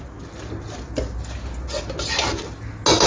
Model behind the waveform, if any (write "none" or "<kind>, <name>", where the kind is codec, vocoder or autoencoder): none